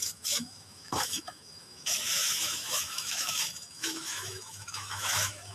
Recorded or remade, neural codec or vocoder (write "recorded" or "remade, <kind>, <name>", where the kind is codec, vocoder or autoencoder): remade, autoencoder, DAC-VAE